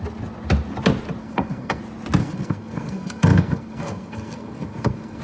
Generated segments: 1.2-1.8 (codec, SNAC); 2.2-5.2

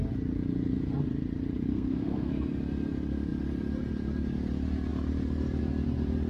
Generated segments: 1.7-2.3 (codec, SNAC)

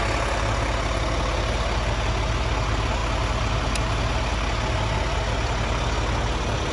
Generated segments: none

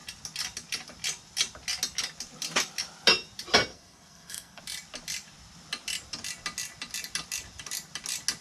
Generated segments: 3.7-4.6 (codec, SNAC)

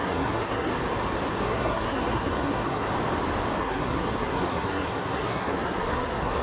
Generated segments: 0.0-0.7 (codec, SNAC); 1.4-2.9; 3.6-6.4

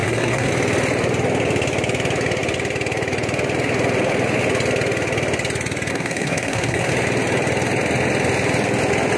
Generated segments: 0.0-0.5 (codec, SNAC); 5.9-6.9

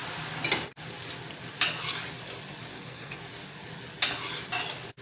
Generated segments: 2.7-3.2 (codec, SNAC)

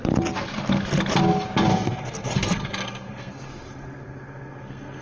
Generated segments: 1.7-5.0 (codec, SNAC)